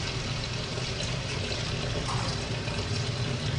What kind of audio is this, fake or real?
real